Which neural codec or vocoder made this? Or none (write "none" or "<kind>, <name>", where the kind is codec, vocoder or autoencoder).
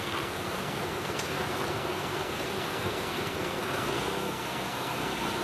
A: codec, SNAC